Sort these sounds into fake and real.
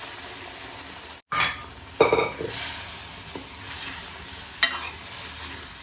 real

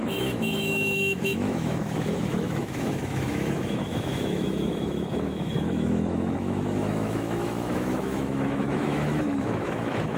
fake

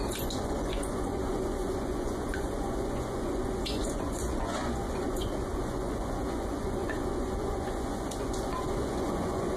fake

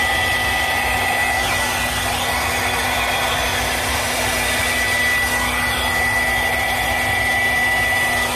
real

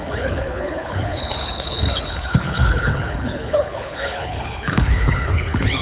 fake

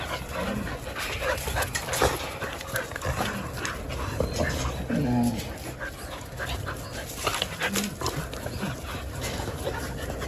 real